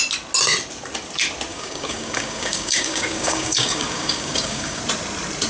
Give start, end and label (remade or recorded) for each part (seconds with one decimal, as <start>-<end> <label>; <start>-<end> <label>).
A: 0.0-1.5 recorded; 1.5-4.8 remade; 4.8-5.5 recorded